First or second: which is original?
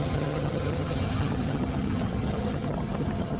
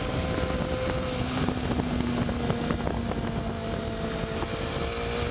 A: second